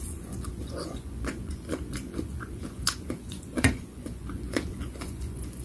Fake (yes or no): yes